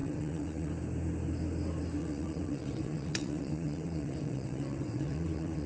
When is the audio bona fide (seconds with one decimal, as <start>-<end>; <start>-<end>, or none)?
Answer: 0.7-2.0